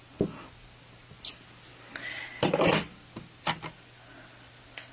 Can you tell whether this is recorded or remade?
recorded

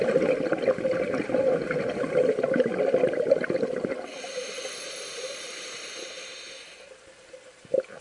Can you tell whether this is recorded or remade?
recorded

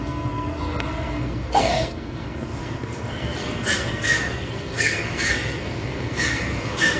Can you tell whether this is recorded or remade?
remade